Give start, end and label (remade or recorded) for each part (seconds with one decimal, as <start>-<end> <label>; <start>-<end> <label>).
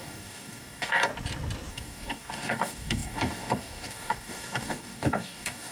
0.0-1.1 remade; 1.1-1.7 recorded; 1.7-5.7 remade